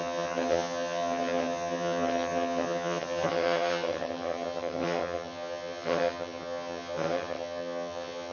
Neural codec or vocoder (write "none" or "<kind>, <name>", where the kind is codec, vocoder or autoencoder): vocoder, HiFi-GAN